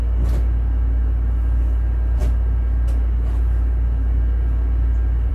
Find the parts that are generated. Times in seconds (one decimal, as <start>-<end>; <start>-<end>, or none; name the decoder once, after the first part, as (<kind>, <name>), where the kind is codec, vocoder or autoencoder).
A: none